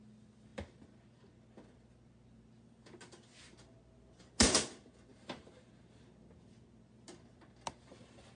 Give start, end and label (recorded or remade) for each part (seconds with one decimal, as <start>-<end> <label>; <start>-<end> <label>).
0.0-8.4 recorded